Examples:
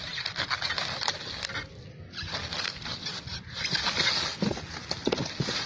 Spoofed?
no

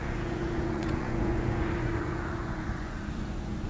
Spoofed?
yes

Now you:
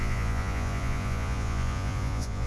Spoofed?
yes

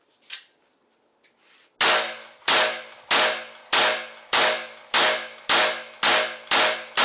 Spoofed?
no